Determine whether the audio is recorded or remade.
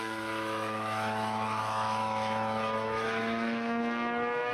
remade